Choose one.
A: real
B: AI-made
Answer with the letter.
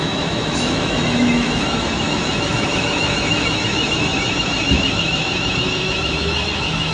B